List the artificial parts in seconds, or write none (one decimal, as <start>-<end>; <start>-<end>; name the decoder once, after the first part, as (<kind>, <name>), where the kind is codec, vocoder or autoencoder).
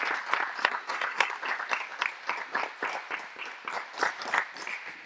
0.6-1.3 (codec, SNAC)